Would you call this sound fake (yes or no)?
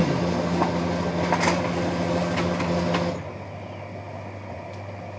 no